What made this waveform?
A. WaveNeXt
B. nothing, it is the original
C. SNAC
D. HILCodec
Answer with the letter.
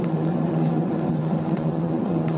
A